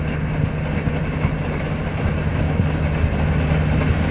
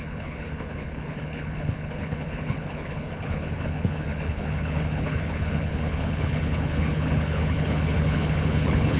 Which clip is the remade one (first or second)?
second